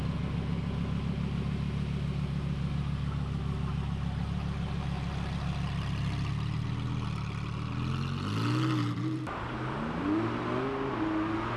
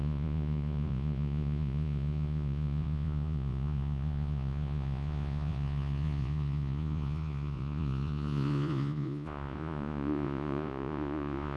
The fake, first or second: second